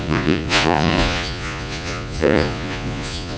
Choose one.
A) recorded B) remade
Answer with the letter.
B